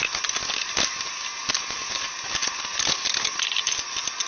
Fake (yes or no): no